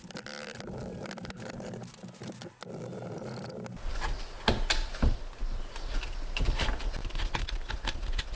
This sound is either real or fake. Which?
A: real